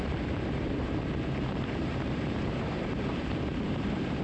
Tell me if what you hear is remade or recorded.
remade